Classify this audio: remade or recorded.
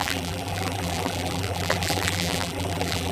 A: remade